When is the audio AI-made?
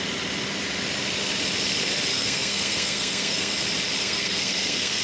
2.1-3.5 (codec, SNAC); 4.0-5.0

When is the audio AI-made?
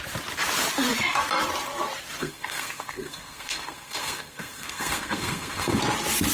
2.2-5.8 (codec, SNAC)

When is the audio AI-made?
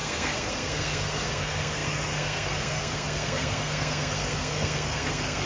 0.0-5.5 (codec, SNAC)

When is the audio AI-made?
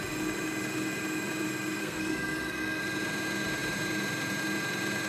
1.8-2.8 (codec, SNAC)